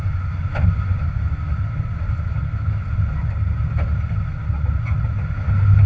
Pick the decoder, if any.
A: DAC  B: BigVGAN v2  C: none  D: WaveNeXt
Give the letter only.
C